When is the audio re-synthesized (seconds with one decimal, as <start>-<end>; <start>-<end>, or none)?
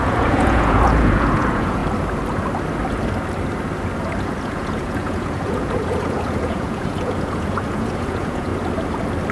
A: 0.0-1.8; 4.2-8.5